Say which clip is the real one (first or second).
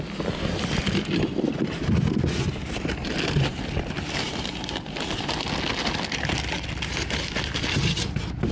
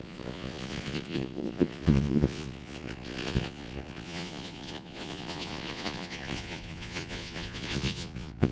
first